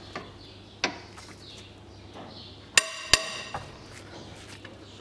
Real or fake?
real